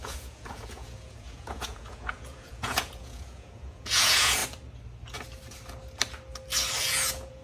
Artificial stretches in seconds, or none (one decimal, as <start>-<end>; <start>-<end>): 0.0-4.4; 6.8-7.4

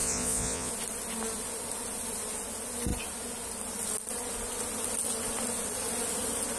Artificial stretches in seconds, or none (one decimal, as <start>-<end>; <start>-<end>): 0.0-0.7

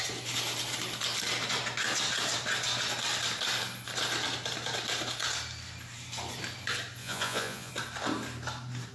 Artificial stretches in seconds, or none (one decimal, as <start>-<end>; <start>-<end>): 7.0-7.7

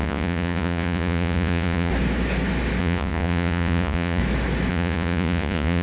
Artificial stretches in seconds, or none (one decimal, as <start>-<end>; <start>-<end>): 0.0-1.9; 2.8-4.2; 4.7-5.8

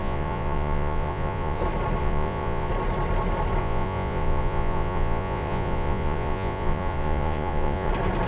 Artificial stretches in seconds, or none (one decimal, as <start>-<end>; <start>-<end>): 0.0-1.6; 2.0-2.7; 3.6-7.9